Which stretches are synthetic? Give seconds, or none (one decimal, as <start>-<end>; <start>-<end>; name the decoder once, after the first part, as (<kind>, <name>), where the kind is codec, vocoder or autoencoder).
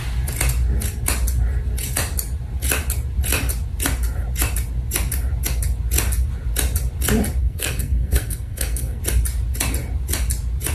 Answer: 7.4-9.0 (codec, SNAC)